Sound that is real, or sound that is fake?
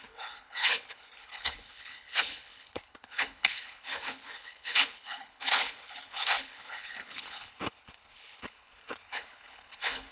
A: fake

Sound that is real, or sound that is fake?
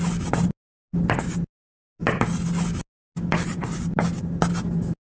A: real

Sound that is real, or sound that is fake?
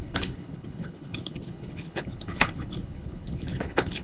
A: fake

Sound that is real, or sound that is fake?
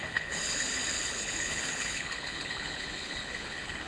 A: fake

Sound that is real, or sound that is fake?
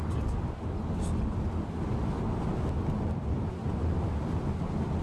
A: real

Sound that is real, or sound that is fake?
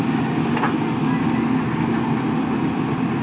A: real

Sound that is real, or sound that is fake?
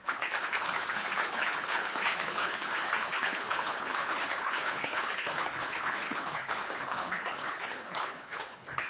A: fake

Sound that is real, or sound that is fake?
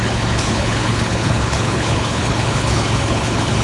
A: fake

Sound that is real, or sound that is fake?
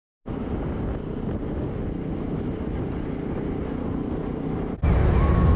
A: real